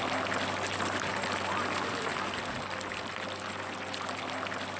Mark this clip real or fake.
real